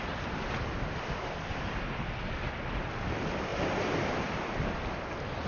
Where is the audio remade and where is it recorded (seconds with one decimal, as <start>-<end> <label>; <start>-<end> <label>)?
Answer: 0.0-5.5 recorded